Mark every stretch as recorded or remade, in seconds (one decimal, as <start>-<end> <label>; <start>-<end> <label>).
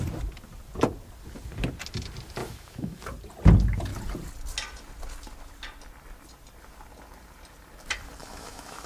0.0-2.4 recorded; 2.4-3.0 remade; 3.0-8.2 recorded; 8.2-8.9 remade